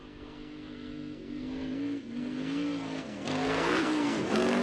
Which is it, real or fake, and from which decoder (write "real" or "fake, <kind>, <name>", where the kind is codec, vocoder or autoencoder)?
fake, codec, SNAC